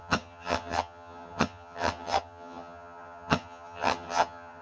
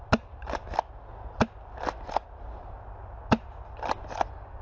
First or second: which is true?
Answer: second